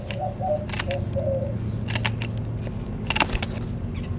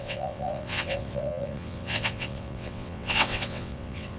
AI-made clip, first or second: second